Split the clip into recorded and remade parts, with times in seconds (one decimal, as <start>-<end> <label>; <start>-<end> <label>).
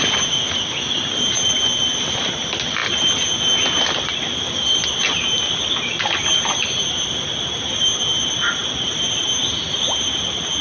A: 0.0-10.6 recorded